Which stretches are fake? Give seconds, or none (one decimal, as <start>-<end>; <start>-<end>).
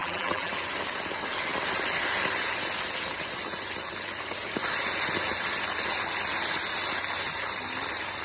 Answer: 0.0-0.5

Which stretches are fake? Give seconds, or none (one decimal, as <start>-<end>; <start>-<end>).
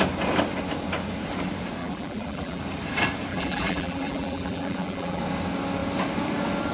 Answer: 1.8-2.6; 3.3-5.2